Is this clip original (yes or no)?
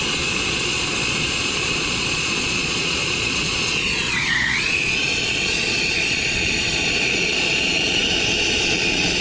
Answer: no